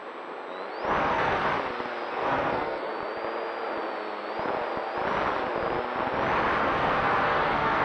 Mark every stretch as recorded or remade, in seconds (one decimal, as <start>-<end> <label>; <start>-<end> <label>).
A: 0.0-1.0 recorded; 1.0-1.5 remade; 1.5-2.1 recorded; 2.1-2.9 remade; 2.9-6.6 recorded; 6.6-7.8 remade